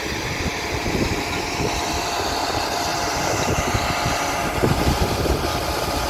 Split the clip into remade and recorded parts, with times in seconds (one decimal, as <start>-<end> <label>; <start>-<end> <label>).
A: 0.0-2.9 recorded; 2.9-3.9 remade; 3.9-4.4 recorded; 4.4-5.4 remade; 5.4-6.1 recorded

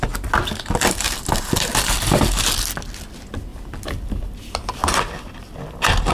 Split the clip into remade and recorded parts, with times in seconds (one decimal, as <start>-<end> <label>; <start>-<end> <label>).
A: 0.0-3.5 recorded; 3.5-4.3 remade; 4.3-6.1 recorded